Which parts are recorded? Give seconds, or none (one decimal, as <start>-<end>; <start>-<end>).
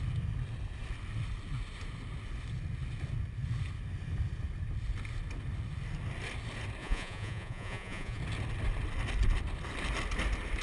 0.0-6.8; 8.2-10.6